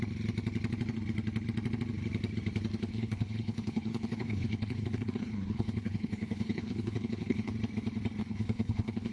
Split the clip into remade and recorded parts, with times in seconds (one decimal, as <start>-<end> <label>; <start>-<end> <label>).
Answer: 0.0-2.9 recorded; 2.9-7.5 remade; 7.5-8.2 recorded; 8.2-9.1 remade